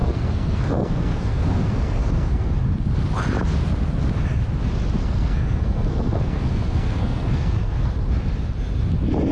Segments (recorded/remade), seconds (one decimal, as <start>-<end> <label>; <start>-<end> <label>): 0.0-2.6 remade; 2.6-5.0 recorded; 5.0-7.9 remade; 7.9-9.3 recorded